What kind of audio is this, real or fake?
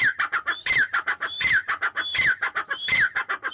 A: real